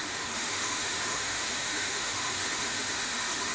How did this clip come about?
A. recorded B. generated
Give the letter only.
B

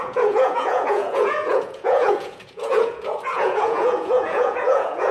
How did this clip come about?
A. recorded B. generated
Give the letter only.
B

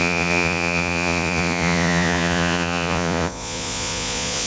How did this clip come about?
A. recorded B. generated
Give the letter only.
B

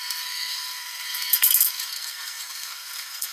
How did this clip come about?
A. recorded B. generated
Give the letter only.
B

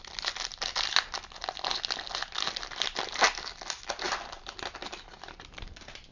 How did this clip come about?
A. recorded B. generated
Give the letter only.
A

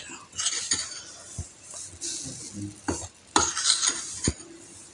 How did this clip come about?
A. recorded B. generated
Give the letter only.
A